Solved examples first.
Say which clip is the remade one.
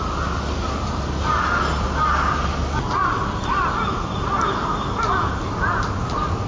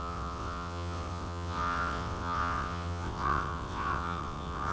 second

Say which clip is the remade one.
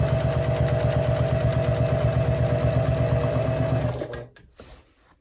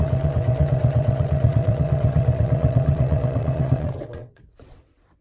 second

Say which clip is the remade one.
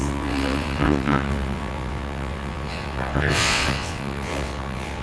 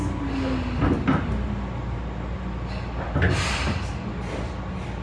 first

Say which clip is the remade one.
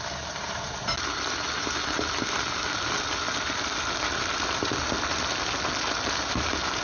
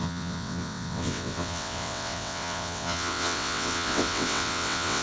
second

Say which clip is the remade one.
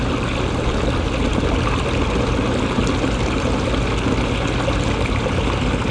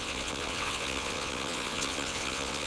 second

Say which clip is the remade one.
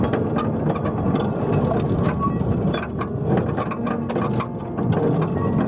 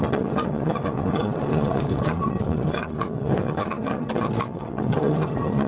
second